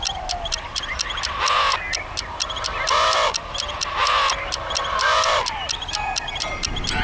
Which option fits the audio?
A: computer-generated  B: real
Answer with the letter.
B